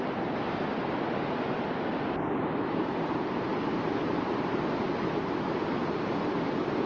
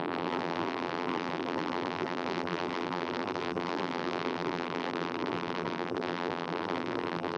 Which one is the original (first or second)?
first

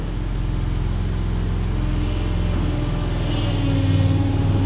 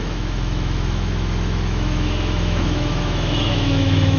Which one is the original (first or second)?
first